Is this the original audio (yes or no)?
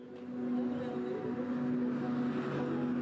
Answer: yes